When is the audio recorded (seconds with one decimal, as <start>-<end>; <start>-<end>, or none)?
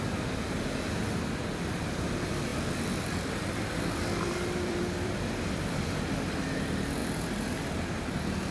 0.0-2.5; 6.1-7.0; 7.7-8.5